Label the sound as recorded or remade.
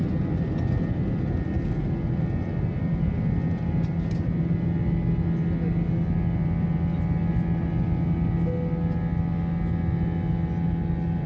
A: recorded